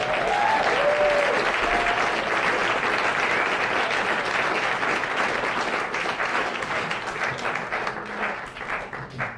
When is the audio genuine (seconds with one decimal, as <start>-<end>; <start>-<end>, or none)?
0.0-6.3; 6.9-9.4